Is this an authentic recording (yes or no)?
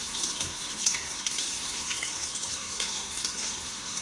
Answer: no